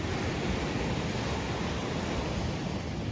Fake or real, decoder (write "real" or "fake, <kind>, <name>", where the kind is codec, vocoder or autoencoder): real